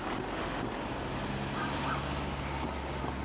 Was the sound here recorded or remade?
recorded